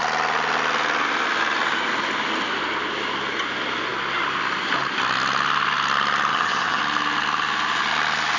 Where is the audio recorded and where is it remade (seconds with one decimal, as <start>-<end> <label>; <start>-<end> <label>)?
0.0-6.3 recorded; 6.3-6.8 remade; 6.8-8.4 recorded